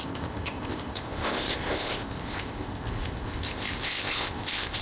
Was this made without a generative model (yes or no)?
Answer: no